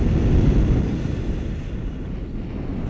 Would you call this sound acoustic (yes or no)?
yes